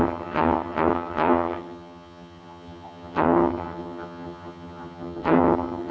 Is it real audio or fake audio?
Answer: fake